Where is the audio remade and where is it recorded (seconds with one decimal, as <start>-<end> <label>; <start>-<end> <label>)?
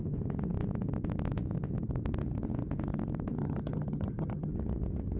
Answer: 0.0-3.4 recorded; 3.4-4.5 remade; 4.5-5.2 recorded